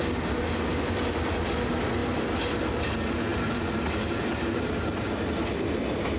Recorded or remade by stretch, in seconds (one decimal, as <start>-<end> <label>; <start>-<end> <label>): 0.0-6.2 recorded